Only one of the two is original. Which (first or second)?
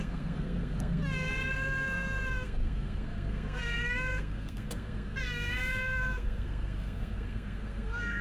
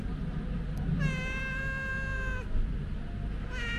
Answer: second